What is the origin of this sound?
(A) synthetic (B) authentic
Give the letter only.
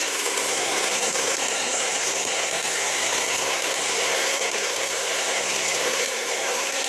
A